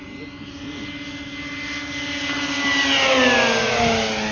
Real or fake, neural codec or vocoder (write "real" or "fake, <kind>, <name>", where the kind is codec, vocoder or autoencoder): real